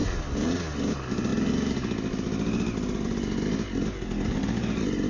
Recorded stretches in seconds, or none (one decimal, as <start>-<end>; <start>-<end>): 0.0-5.1